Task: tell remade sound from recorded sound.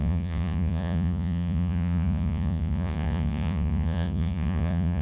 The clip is remade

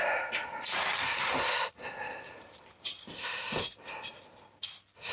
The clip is recorded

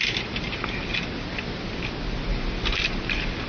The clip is recorded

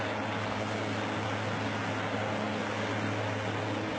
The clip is recorded